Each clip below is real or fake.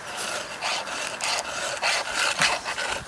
real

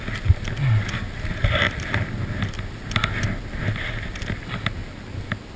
real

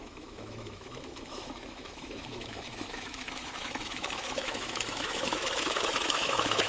fake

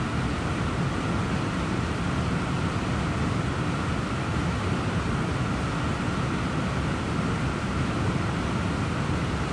real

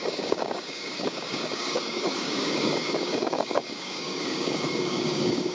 fake